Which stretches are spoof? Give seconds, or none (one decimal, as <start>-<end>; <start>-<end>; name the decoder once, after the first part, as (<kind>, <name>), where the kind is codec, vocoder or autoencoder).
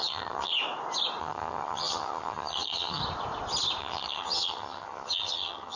0.0-0.5 (vocoder, HiFi-GAN); 1.2-3.0; 3.8-5.8